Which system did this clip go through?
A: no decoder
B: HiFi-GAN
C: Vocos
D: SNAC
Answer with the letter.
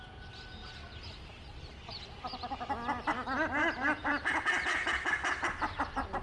A